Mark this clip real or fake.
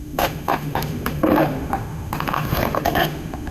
fake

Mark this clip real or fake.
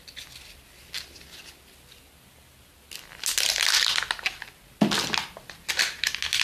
real